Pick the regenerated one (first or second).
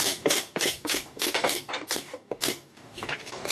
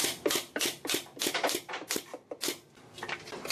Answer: first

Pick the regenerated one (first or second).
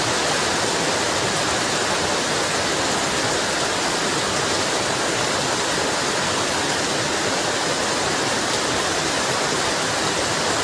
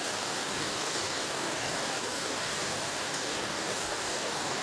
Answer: second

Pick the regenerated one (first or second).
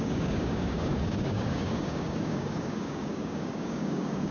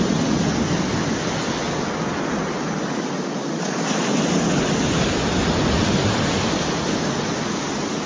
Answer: first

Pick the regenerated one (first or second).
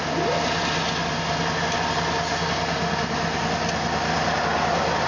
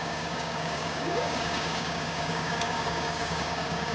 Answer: second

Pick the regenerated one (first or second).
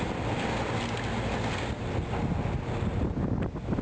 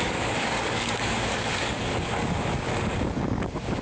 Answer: second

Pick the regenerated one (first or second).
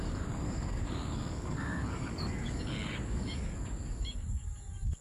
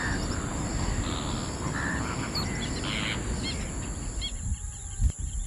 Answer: first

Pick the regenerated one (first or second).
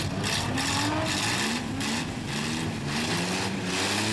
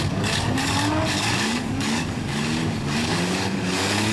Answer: second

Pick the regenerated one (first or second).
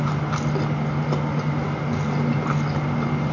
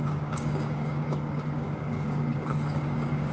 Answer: second